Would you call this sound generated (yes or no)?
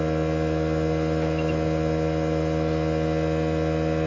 no